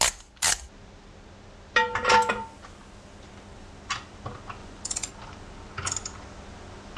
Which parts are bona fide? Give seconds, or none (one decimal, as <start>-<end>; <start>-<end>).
0.0-4.6; 5.1-7.0